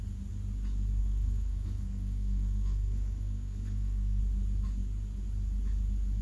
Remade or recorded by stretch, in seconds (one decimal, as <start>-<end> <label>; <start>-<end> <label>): 0.0-1.0 recorded; 1.0-4.2 remade; 4.2-6.2 recorded